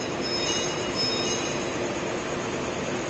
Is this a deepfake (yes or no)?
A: no